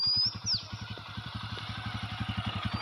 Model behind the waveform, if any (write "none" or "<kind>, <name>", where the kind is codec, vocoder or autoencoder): none